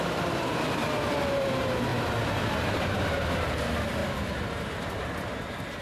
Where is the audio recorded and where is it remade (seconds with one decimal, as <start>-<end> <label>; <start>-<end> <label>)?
0.0-0.8 remade; 0.8-1.3 recorded; 1.3-1.9 remade; 1.9-2.6 recorded; 2.6-5.8 remade